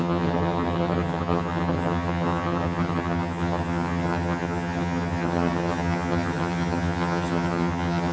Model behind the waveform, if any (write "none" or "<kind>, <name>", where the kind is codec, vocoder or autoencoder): vocoder, HiFi-GAN